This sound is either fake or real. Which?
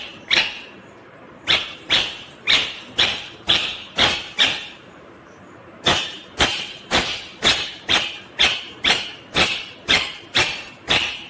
fake